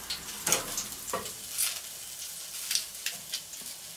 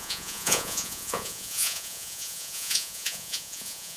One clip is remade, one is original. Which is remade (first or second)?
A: second